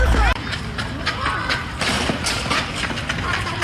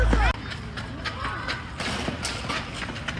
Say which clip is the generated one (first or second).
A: first